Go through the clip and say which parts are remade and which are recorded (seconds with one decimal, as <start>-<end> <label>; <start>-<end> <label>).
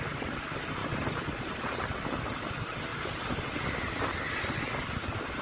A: 0.0-5.4 recorded